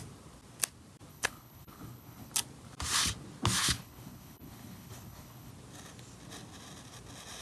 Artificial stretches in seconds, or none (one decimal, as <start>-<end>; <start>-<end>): 1.1-2.3; 3.6-5.5

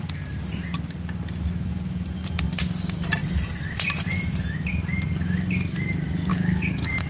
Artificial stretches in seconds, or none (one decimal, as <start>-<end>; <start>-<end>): 6.3-7.1

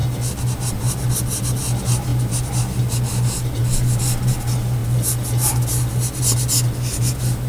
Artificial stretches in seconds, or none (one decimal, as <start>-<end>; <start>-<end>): none

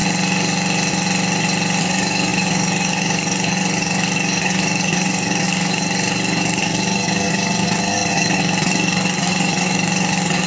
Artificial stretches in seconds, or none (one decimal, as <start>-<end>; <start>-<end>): 1.8-10.5

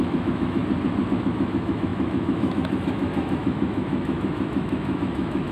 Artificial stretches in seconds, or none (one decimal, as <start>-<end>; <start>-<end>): 0.0-0.6; 1.1-5.5

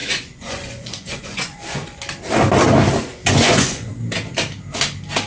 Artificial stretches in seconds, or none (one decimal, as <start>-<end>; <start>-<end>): 0.0-2.0; 3.1-3.9

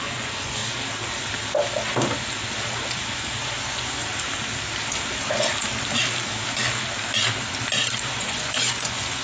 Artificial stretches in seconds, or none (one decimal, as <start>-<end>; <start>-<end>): 0.0-0.6; 2.9-4.0; 8.0-9.2

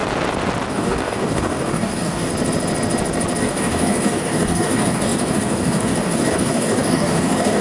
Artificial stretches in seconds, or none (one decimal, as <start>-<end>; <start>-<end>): 0.7-2.3; 3.4-7.6